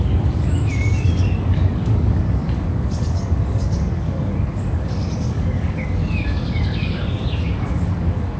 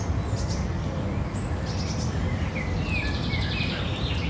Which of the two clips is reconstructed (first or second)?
first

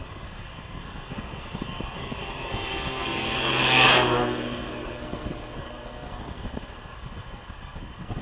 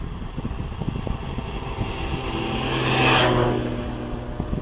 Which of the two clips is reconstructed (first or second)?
first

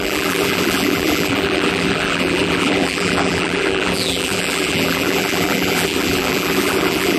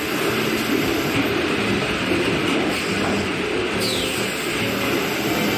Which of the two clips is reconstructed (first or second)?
first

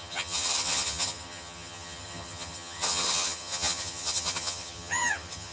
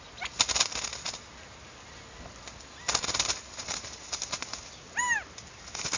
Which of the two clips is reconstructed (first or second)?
first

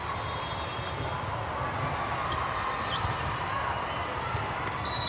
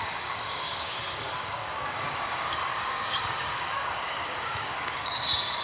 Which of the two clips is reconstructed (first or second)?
second